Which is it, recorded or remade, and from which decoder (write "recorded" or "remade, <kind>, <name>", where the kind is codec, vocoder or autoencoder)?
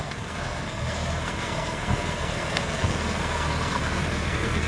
remade, codec, SNAC